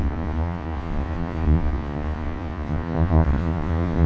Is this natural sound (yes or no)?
no